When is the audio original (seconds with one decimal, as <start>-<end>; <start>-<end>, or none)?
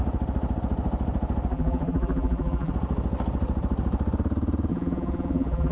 0.0-1.5; 2.7-4.7